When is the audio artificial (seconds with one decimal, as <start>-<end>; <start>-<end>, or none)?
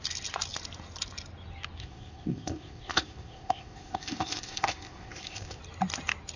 1.8-5.6